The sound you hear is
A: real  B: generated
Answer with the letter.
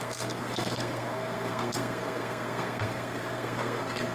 B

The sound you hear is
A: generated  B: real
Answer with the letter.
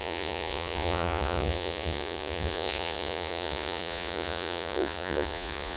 A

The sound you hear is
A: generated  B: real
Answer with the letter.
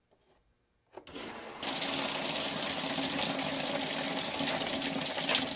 B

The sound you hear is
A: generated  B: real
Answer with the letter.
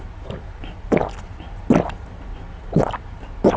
B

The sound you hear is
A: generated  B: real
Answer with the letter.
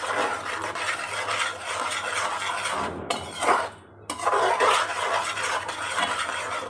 B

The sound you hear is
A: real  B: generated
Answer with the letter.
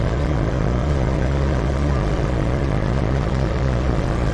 B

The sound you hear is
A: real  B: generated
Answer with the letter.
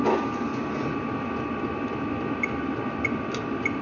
A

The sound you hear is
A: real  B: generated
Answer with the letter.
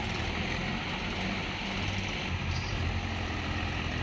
A